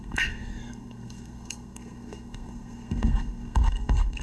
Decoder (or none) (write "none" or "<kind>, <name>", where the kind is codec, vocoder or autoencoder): codec, SNAC